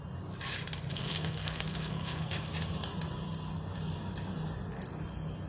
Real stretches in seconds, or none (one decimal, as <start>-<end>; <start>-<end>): 0.0-0.9; 2.4-5.5